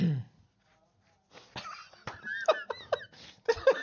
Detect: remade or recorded recorded